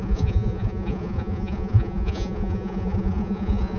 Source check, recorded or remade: remade